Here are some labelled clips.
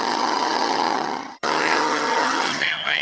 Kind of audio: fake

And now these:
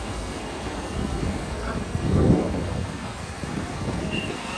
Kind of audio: fake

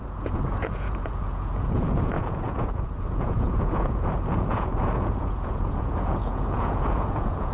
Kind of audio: fake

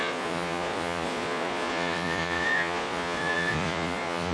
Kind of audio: fake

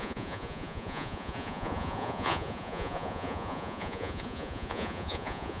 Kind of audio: fake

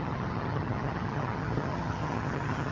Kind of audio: fake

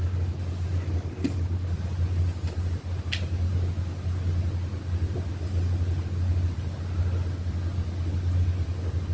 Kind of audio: real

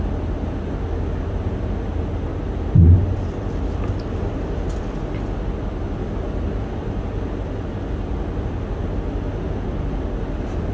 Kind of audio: real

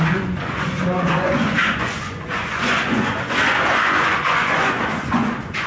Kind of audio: fake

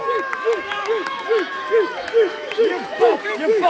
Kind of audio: fake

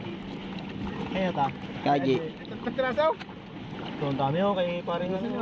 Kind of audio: real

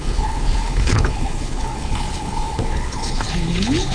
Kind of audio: fake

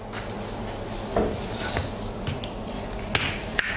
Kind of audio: real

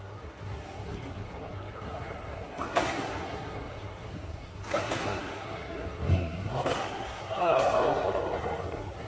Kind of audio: fake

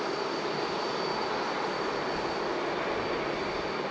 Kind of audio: real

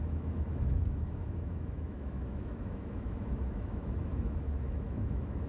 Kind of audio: fake